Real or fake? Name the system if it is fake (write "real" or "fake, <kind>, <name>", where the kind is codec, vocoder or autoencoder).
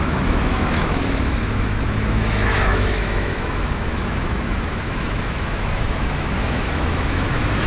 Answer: fake, autoencoder, DAC-VAE